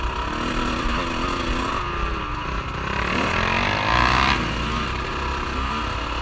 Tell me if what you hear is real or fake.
real